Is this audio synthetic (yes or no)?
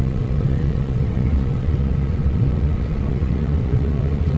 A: yes